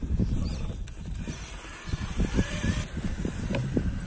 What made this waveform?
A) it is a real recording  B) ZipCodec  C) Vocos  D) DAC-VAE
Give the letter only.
A